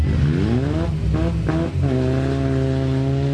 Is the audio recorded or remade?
recorded